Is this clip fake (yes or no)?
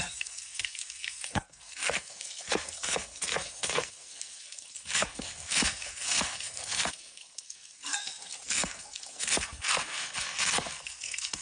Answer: yes